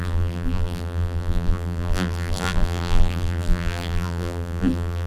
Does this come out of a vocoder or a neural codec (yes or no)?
yes